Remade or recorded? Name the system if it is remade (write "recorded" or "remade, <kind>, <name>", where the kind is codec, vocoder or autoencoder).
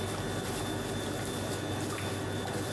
recorded